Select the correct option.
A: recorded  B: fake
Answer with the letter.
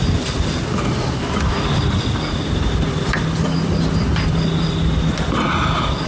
A